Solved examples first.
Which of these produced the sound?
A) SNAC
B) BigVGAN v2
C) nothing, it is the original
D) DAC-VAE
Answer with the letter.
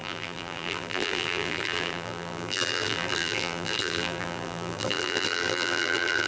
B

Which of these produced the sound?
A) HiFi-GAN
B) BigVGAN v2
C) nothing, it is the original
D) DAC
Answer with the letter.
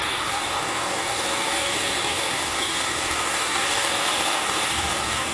D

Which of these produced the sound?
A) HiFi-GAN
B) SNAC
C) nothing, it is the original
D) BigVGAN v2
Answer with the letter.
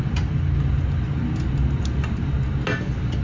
C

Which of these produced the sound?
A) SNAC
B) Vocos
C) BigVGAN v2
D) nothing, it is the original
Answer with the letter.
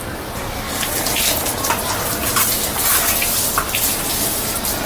D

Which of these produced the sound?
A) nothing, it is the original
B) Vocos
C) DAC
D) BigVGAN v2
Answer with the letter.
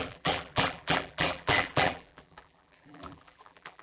D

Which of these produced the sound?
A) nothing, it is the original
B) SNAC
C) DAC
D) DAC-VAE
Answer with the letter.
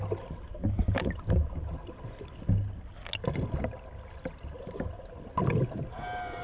A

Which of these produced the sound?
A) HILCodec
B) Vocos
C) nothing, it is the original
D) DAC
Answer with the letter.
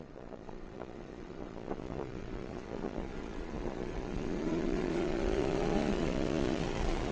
B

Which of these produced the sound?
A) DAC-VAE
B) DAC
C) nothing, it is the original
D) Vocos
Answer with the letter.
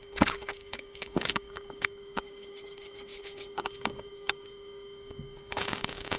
B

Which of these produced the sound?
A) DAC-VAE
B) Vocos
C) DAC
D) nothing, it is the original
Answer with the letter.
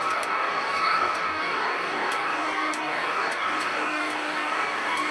C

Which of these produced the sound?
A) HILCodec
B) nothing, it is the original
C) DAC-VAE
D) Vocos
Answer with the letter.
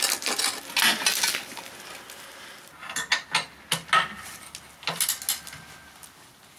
B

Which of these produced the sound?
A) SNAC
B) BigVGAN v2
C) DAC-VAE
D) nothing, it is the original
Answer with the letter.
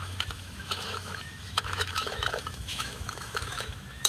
C